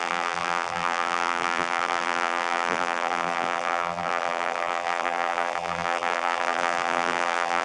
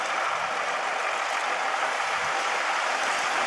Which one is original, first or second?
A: second